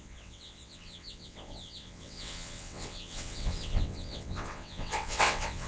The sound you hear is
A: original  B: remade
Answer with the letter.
B